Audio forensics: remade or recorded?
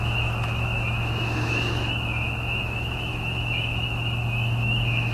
remade